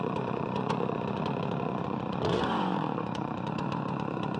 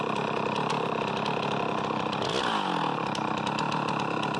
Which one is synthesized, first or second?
first